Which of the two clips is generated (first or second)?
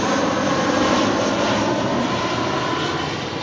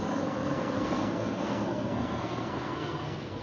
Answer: second